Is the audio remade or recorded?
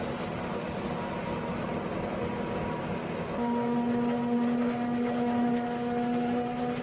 recorded